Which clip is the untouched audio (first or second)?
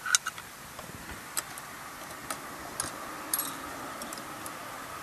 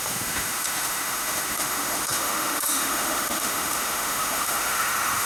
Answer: first